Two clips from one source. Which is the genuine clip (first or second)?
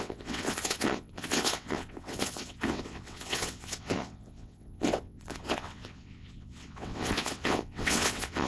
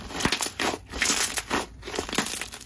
second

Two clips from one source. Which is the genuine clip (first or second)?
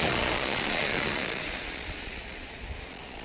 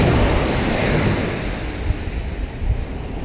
second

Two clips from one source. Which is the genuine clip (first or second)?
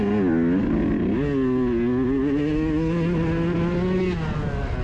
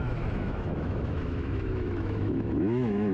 first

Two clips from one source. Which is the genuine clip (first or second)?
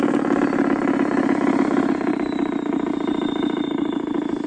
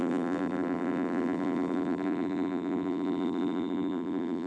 first